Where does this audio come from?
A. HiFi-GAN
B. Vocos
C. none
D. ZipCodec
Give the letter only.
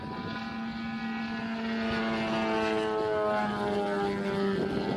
C